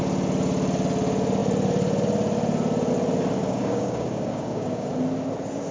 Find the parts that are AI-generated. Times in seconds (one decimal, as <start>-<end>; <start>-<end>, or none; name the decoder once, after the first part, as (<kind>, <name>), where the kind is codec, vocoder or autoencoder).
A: 3.4-4.9 (codec, DAC)